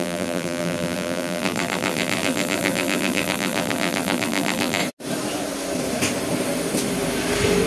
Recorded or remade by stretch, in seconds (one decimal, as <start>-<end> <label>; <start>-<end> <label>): 0.0-4.8 remade; 4.8-7.7 recorded